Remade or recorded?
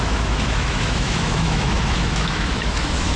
remade